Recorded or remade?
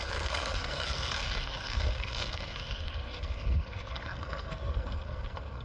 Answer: remade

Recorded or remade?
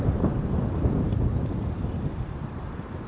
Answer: remade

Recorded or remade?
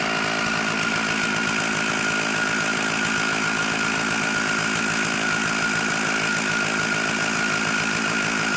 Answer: recorded